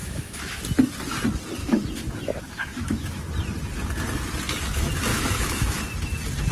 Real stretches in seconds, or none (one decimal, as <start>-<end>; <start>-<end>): 0.6-1.6; 3.2-5.1; 5.8-6.5